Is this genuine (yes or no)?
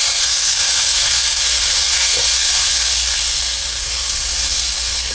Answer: no